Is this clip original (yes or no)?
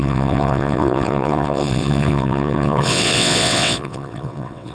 no